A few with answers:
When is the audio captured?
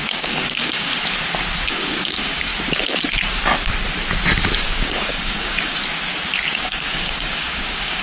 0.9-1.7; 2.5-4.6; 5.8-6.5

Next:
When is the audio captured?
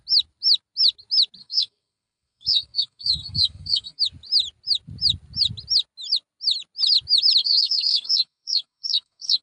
0.0-1.4; 4.0-7.4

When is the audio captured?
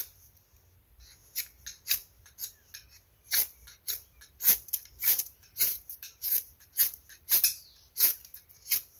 0.0-4.9; 8.1-9.0